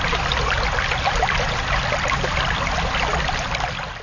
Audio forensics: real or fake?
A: real